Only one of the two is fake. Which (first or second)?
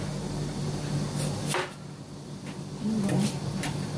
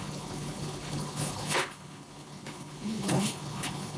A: second